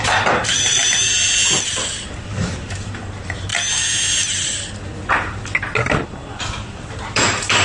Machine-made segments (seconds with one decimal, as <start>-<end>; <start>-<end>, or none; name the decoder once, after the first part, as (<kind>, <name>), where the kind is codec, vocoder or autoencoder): 0.0-0.8 (vocoder, BigVGAN v2); 2.2-3.5; 6.4-7.6